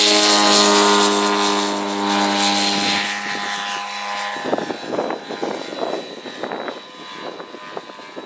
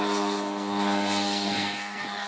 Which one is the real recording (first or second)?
first